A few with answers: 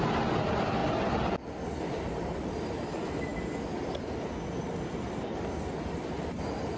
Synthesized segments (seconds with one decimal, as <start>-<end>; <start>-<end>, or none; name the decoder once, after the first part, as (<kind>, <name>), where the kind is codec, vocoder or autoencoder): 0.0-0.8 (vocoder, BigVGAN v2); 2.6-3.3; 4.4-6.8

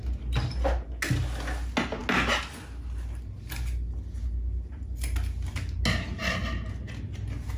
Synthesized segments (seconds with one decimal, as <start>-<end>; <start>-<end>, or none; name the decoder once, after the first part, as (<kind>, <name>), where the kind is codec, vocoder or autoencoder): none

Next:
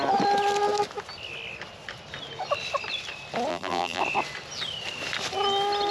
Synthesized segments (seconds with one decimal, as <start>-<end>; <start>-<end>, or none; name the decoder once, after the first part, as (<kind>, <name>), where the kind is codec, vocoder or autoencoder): 3.5-4.0 (vocoder, BigVGAN v2)

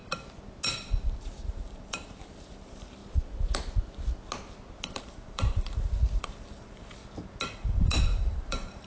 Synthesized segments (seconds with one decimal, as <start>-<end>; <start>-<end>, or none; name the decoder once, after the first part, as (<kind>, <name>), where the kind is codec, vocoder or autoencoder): 1.2-3.0 (vocoder, BigVGAN v2); 5.0-7.0; 7.5-8.9

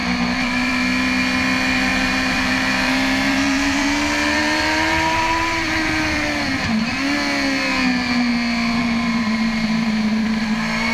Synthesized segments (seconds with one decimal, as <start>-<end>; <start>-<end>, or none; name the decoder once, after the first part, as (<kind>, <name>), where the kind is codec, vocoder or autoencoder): 1.9-6.8 (vocoder, BigVGAN v2); 8.8-10.4

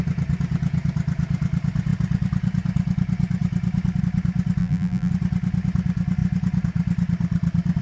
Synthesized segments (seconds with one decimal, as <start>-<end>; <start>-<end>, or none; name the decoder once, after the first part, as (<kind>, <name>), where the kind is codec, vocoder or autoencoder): 4.6-5.1 (vocoder, BigVGAN v2)

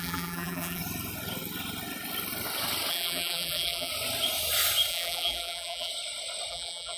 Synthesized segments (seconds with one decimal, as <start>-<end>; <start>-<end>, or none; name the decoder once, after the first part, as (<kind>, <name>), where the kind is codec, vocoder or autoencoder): 0.0-0.8 (vocoder, BigVGAN v2); 2.9-3.9; 4.9-5.9; 6.5-7.0

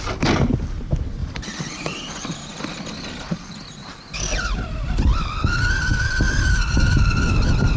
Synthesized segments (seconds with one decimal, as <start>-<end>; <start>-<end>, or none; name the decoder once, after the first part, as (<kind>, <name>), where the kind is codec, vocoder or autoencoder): 1.2-3.5 (vocoder, BigVGAN v2); 5.9-7.1